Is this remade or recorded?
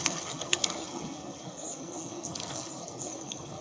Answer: remade